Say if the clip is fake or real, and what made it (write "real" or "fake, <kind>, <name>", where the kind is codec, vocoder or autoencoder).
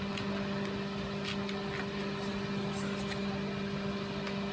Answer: real